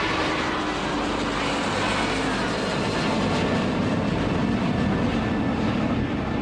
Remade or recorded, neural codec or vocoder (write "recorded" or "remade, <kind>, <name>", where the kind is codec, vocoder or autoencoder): recorded